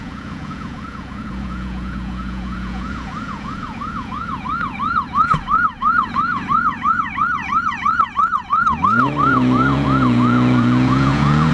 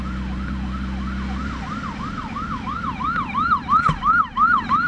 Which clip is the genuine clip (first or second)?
second